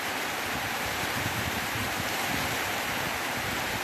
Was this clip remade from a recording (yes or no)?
yes